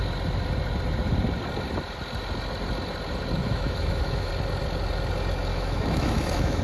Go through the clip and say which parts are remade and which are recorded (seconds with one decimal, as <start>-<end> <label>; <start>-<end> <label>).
0.0-3.4 recorded; 3.4-4.3 remade; 4.3-5.5 recorded; 5.5-6.6 remade